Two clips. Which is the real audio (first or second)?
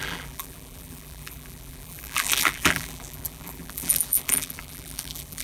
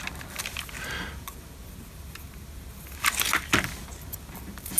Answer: second